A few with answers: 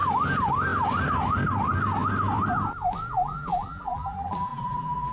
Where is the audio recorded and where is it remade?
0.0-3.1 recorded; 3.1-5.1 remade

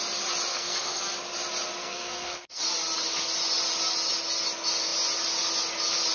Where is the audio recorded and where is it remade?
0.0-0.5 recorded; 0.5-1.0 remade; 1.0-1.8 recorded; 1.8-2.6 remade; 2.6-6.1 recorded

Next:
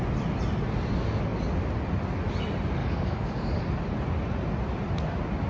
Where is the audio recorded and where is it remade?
0.0-2.8 recorded; 2.8-3.6 remade; 3.6-5.5 recorded